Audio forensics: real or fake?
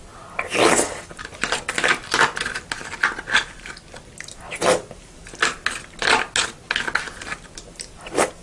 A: real